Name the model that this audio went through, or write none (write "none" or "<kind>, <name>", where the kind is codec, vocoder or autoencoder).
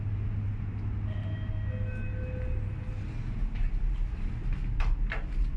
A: none